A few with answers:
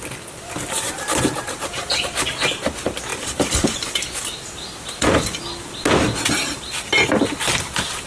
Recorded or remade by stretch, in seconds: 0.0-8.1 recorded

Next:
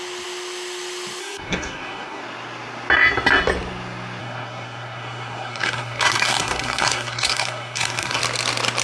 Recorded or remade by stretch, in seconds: 0.0-1.2 recorded; 1.2-2.2 remade; 2.2-4.2 recorded; 4.2-8.2 remade; 8.2-8.8 recorded

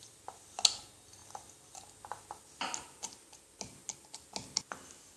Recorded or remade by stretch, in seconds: 0.0-5.2 recorded

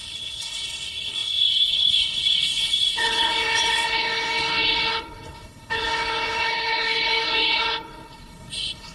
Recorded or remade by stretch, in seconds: 0.0-8.9 remade

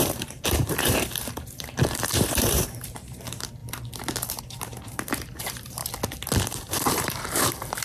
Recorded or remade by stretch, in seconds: 0.0-3.6 remade; 3.6-4.4 recorded; 4.4-5.8 remade; 5.8-6.5 recorded; 6.5-7.8 remade

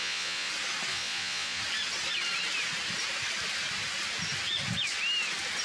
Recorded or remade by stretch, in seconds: 0.0-0.5 remade; 0.5-0.9 recorded; 0.9-1.6 remade; 1.6-5.6 recorded

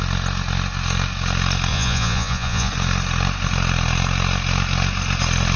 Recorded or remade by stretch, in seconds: 0.0-1.7 recorded; 1.7-2.7 remade; 2.7-5.6 recorded